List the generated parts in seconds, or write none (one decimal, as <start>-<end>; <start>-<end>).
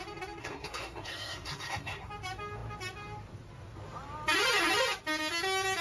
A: 0.4-2.1